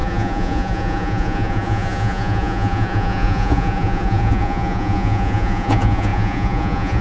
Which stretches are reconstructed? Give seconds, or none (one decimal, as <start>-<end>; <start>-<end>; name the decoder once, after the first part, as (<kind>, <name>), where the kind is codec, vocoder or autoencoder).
0.0-7.0 (vocoder, Vocos)